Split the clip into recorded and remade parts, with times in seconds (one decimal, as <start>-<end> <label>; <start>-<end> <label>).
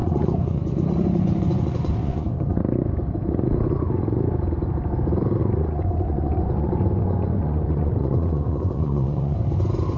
0.0-2.6 remade; 2.6-5.4 recorded; 5.4-9.4 remade; 9.4-10.0 recorded